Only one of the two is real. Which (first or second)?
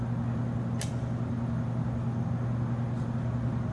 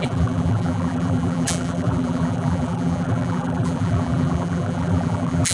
first